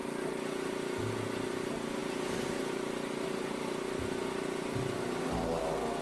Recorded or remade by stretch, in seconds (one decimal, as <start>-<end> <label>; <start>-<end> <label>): 0.0-6.0 recorded